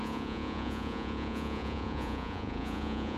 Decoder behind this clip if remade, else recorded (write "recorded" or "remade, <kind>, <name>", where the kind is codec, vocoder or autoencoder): remade, vocoder, Vocos